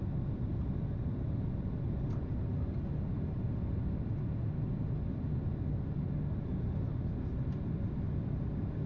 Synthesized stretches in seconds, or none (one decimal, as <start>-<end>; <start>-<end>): none